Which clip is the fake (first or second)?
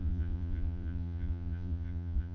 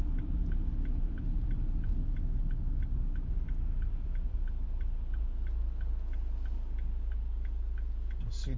first